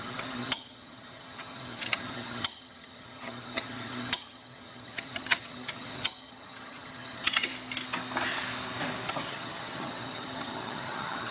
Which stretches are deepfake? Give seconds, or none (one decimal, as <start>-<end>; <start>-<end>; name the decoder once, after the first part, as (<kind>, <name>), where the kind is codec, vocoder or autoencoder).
0.0-7.5 (vocoder, HiFi-GAN); 9.1-11.3